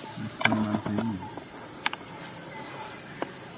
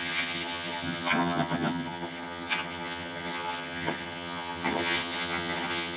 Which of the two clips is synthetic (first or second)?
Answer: second